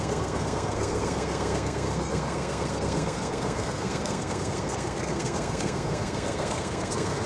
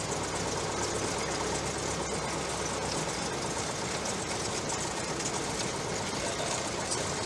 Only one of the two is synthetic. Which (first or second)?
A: first